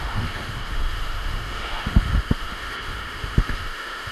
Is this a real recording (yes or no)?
no